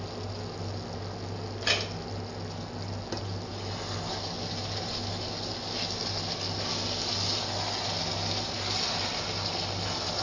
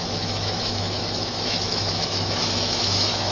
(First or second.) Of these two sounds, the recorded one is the first